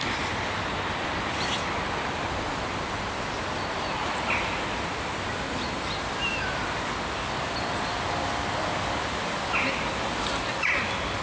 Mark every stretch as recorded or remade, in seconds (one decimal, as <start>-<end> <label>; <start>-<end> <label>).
0.0-11.2 recorded